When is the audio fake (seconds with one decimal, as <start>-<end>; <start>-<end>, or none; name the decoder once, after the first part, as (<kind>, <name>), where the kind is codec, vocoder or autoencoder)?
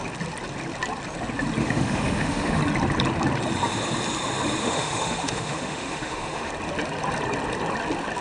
1.6-2.6 (autoencoder, DAC-VAE); 4.6-6.5